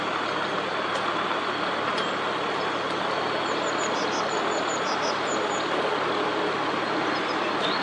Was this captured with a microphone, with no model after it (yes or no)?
yes